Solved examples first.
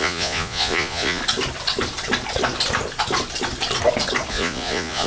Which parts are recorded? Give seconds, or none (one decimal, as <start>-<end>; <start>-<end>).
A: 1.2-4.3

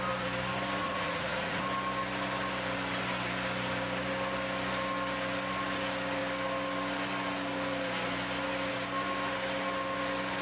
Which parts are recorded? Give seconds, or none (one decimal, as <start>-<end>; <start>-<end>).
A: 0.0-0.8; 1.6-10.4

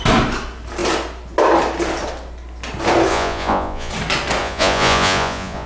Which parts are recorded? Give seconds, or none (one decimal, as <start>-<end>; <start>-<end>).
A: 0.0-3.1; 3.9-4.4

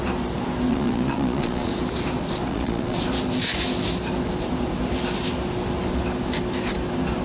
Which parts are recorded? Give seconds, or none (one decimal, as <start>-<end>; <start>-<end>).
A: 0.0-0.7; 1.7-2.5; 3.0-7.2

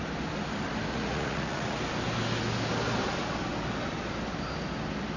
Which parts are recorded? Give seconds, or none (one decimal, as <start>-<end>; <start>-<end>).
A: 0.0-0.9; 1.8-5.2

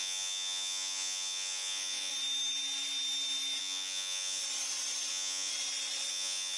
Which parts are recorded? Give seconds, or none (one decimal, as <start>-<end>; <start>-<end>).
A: 2.1-3.6; 4.4-5.1; 5.5-6.1